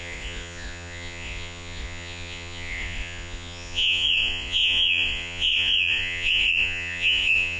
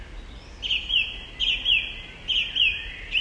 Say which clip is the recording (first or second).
second